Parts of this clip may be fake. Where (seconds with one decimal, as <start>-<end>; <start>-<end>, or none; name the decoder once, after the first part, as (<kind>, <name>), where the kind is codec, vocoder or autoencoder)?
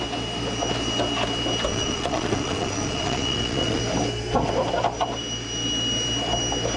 1.7-3.8 (vocoder, Vocos)